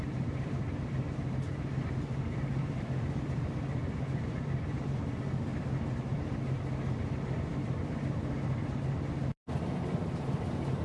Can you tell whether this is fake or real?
fake